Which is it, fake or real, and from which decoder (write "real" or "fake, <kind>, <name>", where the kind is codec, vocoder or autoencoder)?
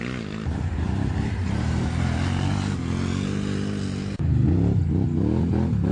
real